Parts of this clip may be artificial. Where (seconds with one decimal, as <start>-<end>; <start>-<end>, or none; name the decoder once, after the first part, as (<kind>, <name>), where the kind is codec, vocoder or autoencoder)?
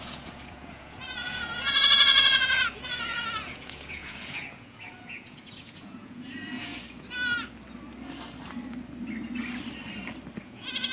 0.0-6.7 (vocoder, Vocos); 10.4-10.9